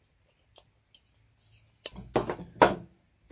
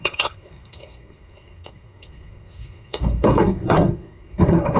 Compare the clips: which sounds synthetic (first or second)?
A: second